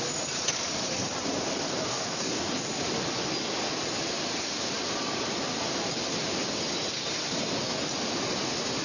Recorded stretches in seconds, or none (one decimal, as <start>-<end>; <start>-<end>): 0.0-1.9; 2.5-8.8

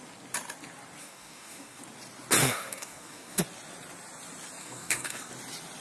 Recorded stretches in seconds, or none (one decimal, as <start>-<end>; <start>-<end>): 0.0-1.0; 1.8-2.4; 3.4-4.6; 5.3-5.8

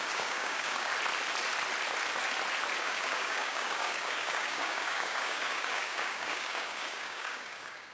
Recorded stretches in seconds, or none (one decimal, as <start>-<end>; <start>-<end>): 0.9-2.8

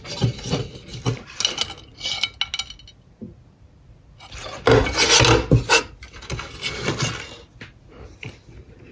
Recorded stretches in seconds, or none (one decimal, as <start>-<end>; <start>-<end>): 0.0-8.9

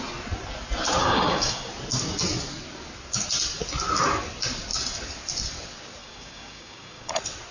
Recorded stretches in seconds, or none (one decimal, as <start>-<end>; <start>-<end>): 0.0-1.0; 1.7-6.0; 7.1-7.5